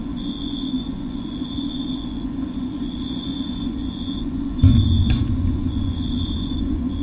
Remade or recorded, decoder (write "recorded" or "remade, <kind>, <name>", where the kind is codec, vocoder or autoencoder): remade, vocoder, Vocos